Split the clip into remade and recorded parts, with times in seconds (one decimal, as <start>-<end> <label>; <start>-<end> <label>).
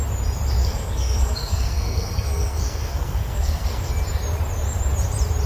0.0-0.6 recorded; 0.6-3.9 remade; 3.9-5.5 recorded